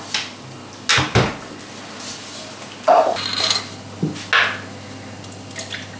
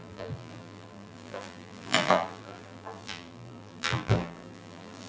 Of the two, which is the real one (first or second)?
first